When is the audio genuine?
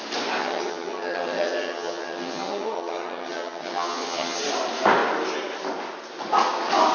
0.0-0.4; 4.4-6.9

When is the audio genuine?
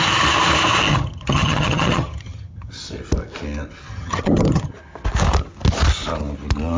0.0-0.9; 2.7-3.9; 4.7-6.8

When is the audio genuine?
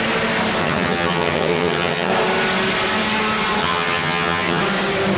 0.0-0.6; 2.1-3.6; 4.6-5.2